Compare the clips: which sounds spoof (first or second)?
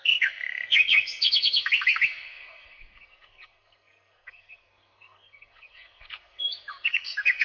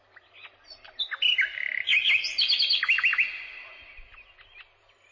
first